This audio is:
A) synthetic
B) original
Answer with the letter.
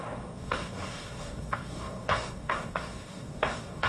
A